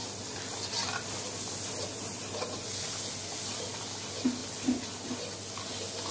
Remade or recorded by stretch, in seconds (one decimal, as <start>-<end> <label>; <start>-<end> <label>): 0.0-6.1 recorded